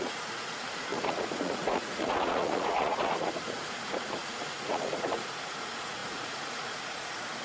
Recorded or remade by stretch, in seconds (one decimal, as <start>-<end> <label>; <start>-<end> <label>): 0.0-7.4 remade